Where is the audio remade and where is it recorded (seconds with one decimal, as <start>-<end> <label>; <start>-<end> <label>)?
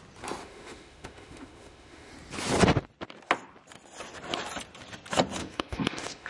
0.0-0.4 recorded; 0.4-2.1 remade; 2.1-5.4 recorded; 5.4-6.3 remade